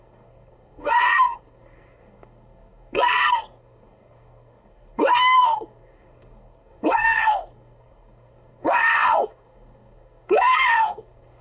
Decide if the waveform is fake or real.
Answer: fake